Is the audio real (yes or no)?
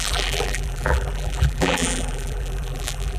no